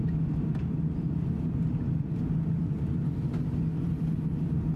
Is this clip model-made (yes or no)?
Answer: no